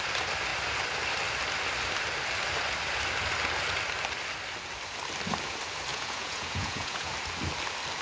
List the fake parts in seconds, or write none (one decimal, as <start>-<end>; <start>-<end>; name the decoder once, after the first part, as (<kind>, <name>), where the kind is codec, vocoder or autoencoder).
5.9-7.1 (vocoder, Vocos)